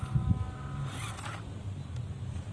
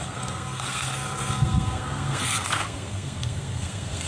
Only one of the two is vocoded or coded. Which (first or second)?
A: second